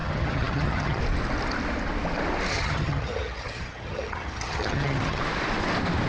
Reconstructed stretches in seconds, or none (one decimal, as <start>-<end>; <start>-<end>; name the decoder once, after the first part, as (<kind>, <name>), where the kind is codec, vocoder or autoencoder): 0.0-1.0 (vocoder, HiFi-GAN); 2.5-5.2

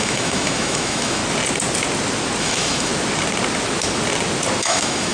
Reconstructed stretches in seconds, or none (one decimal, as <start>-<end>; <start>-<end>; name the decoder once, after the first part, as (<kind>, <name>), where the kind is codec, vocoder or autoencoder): 0.0-1.2 (autoencoder, DAC-VAE); 2.4-2.9; 4.6-5.1

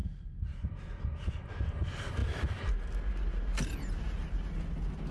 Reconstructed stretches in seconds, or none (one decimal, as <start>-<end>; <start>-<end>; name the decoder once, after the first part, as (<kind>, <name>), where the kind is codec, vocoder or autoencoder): none